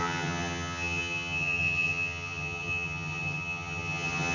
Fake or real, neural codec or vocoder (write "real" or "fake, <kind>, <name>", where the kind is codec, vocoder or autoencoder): fake, vocoder, HiFi-GAN